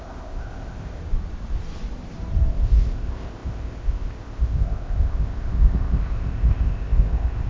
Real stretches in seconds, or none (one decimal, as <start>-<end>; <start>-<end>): 1.0-2.5

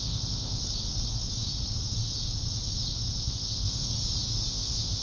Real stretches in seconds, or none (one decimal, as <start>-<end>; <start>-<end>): 0.6-3.2; 3.8-4.5